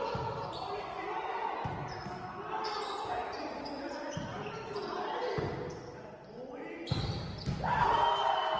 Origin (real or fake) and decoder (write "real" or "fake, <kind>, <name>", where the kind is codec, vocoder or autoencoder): real